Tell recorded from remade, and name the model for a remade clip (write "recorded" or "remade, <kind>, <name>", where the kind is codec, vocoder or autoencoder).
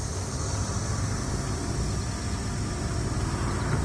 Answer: recorded